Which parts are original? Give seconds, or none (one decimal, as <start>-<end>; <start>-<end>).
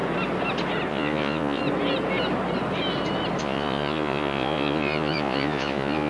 0.0-0.9; 1.6-3.4